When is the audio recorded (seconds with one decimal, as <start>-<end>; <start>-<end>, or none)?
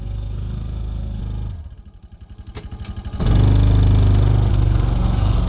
1.2-4.5